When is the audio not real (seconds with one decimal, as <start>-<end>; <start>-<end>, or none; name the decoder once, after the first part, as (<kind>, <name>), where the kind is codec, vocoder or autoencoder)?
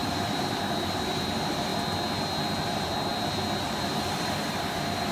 0.0-1.7 (vocoder, BigVGAN v2); 2.6-3.1; 3.6-5.1